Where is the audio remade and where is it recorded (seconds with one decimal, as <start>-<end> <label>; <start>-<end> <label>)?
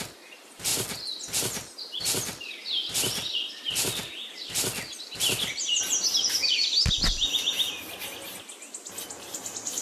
0.0-9.8 recorded